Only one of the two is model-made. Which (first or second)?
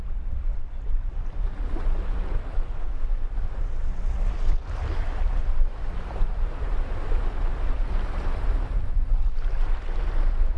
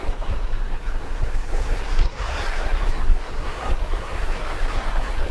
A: second